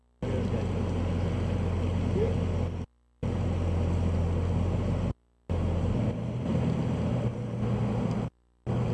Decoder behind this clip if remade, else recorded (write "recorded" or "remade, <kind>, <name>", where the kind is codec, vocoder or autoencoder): recorded